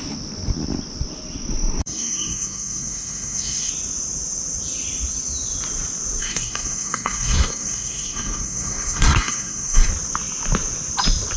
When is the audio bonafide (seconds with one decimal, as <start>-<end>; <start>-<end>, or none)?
0.0-1.8; 3.7-6.2; 9.9-11.4